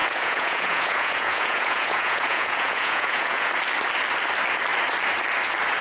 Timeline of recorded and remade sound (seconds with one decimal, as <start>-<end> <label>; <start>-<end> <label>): 0.0-3.5 remade; 3.5-5.8 recorded